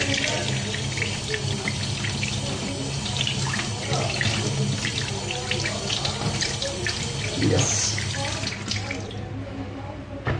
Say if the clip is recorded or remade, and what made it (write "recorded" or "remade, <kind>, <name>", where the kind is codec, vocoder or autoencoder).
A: recorded